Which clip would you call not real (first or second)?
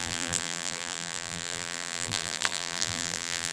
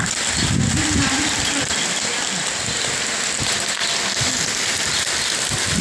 first